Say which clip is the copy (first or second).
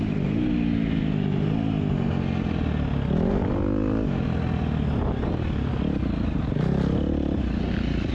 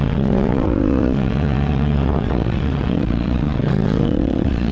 second